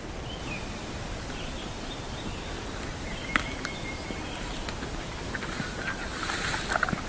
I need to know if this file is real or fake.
real